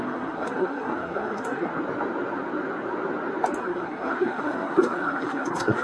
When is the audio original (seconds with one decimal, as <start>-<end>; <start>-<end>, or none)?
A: 1.7-3.6